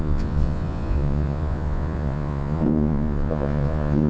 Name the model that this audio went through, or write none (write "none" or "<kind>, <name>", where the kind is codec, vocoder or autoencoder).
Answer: vocoder, Vocos